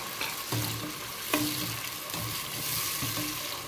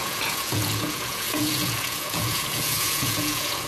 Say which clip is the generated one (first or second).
second